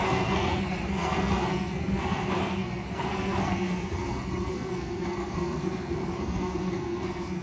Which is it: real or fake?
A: fake